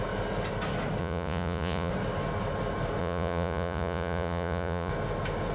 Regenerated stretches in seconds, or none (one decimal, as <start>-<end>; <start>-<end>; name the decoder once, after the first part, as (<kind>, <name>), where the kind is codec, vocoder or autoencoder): 1.0-1.9 (vocoder, Vocos); 3.0-4.9